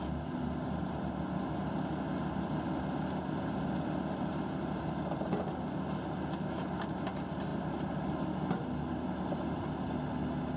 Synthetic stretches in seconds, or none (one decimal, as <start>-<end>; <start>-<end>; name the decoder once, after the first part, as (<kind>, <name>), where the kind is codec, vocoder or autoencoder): none